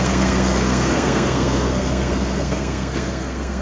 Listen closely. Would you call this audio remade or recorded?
remade